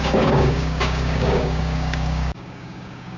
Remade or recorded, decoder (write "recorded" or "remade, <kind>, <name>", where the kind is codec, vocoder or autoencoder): remade, codec, DAC